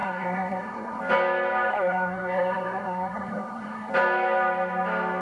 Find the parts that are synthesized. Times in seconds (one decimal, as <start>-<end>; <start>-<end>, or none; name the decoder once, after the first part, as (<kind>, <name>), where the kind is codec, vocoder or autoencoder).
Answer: 0.0-1.0 (codec, SNAC); 1.7-3.9